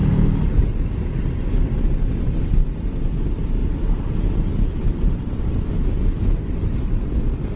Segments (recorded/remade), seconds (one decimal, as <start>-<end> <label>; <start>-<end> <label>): 0.0-2.0 recorded; 2.0-3.6 remade; 3.6-6.3 recorded; 6.3-7.6 remade